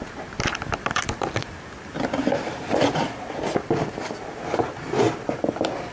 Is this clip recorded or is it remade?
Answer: recorded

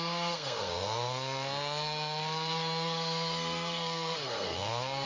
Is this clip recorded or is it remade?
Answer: remade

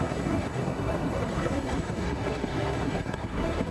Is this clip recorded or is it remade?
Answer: remade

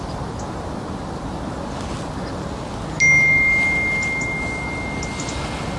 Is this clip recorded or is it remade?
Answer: recorded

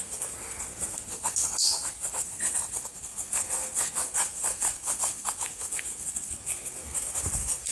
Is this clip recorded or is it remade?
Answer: remade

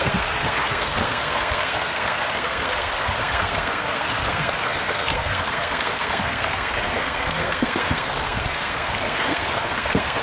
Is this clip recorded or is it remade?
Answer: remade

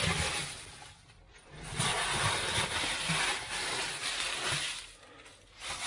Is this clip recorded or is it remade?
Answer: recorded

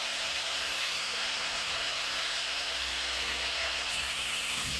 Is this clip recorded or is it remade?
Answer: remade